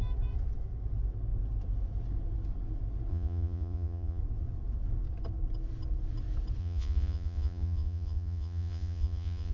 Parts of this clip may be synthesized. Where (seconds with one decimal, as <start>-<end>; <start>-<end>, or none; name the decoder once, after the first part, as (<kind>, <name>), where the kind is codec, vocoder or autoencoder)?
3.1-4.2 (vocoder, Vocos); 6.6-9.5